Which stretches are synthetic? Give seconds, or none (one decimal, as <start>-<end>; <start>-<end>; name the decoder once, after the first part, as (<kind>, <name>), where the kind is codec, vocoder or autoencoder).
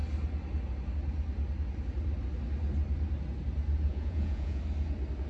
3.9-4.6 (vocoder, Vocos)